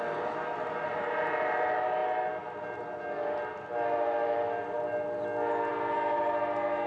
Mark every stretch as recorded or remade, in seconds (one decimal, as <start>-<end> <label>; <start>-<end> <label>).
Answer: 0.0-6.9 recorded